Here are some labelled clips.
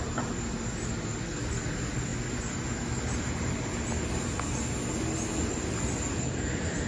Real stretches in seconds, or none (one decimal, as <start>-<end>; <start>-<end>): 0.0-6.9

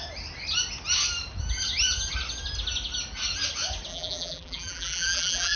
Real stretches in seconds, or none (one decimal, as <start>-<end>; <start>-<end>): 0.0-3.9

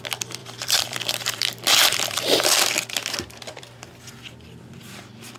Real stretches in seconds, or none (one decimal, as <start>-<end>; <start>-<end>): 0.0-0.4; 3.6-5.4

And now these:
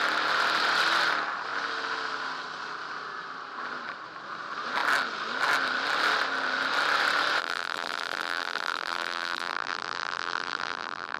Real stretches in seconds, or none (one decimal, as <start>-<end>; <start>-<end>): 0.0-7.4

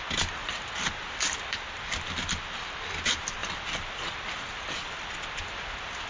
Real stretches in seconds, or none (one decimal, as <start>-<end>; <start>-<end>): 0.0-0.4; 2.9-3.4; 5.3-6.1

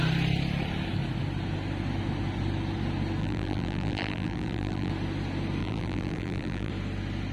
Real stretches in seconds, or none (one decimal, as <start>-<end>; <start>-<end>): 0.0-3.2; 4.9-5.6; 6.7-7.3